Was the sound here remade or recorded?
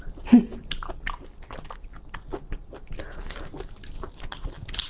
recorded